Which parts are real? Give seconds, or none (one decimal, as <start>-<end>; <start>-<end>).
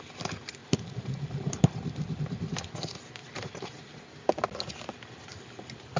0.0-0.6; 2.2-3.2; 4.1-6.0